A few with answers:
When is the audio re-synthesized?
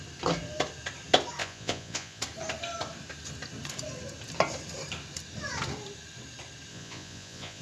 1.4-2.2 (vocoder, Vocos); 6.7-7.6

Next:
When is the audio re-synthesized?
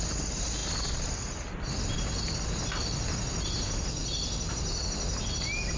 none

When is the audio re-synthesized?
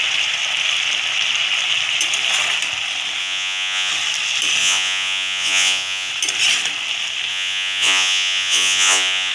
3.2-3.9 (vocoder, Vocos); 4.6-6.1; 7.3-9.3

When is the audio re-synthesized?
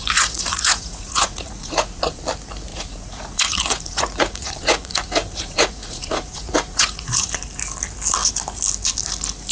0.0-2.2 (vocoder, Vocos); 2.7-7.3